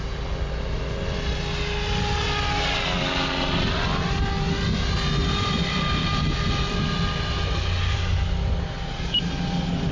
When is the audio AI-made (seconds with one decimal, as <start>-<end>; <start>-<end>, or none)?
5.2-7.0